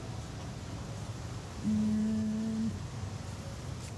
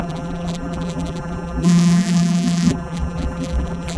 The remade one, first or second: second